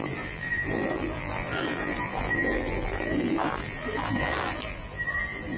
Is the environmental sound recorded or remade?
remade